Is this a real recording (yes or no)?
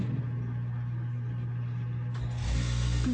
yes